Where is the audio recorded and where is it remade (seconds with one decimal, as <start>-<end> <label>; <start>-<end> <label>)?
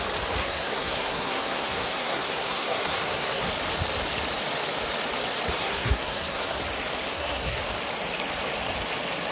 0.0-0.4 recorded; 0.4-3.5 remade; 3.5-5.6 recorded; 5.6-6.6 remade; 6.6-7.1 recorded; 7.1-7.6 remade; 7.6-9.3 recorded